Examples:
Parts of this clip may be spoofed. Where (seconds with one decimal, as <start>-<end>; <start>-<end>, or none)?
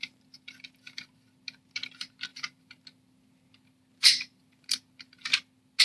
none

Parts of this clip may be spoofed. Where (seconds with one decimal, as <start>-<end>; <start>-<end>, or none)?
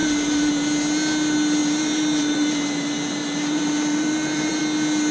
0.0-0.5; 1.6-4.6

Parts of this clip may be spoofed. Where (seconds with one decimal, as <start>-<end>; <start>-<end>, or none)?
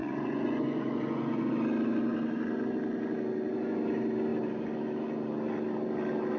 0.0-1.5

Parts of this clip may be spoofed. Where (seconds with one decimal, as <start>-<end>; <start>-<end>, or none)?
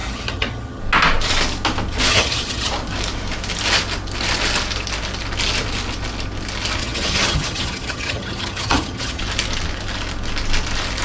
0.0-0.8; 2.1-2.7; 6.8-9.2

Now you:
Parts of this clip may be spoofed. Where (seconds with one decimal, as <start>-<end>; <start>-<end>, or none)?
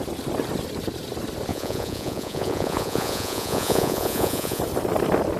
1.5-4.6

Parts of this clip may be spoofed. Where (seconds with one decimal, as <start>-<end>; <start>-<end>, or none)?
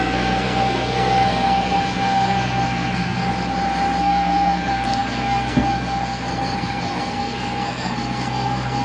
0.0-3.3; 4.0-8.8